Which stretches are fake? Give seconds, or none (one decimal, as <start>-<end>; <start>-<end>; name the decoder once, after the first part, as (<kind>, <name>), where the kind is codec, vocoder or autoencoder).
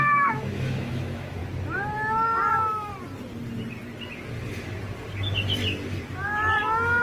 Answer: 0.0-1.4 (autoencoder, DAC-VAE); 2.5-2.9; 6.5-7.0